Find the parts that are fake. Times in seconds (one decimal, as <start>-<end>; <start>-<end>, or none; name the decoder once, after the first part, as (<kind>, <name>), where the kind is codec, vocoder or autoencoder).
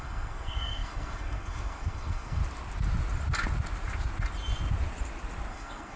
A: 0.0-2.4 (codec, SNAC); 5.5-6.0